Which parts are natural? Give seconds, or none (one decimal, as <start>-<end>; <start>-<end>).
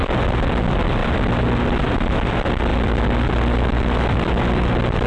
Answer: 0.0-5.1